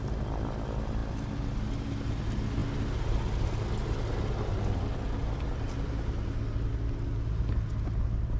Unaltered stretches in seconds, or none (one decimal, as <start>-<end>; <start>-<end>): 0.0-8.4